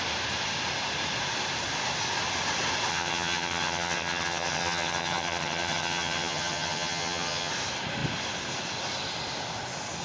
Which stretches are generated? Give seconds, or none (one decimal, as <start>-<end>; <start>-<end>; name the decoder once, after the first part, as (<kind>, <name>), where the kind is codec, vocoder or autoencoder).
2.9-7.5 (vocoder, HiFi-GAN)